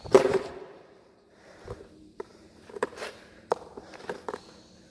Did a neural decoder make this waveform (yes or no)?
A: yes